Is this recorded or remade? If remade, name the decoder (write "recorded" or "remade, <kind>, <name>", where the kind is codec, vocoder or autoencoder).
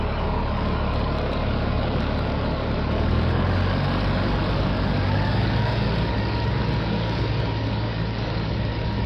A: remade, codec, DAC